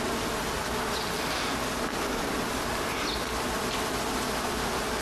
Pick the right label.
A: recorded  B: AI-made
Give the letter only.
A